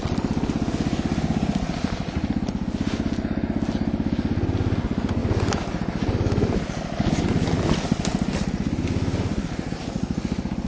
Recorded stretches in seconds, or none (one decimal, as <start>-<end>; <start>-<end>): 0.0-10.7